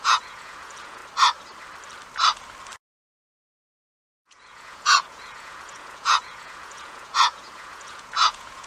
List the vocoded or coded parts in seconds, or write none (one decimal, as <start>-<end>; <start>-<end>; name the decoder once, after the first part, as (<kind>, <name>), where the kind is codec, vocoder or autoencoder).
0.0-1.0 (vocoder, Vocos); 3.7-8.7